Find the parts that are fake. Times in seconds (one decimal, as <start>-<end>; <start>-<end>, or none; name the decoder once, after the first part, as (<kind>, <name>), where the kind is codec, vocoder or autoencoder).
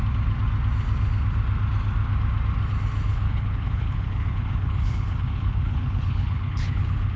3.1-7.2 (codec, HILCodec)